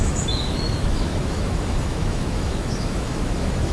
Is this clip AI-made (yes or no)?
yes